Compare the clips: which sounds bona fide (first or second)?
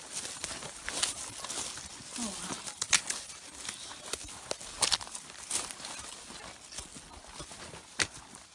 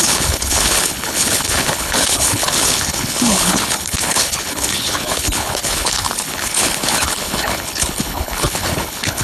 first